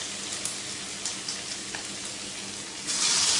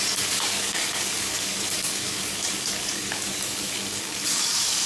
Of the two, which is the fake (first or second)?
second